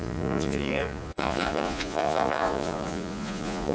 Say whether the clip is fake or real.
fake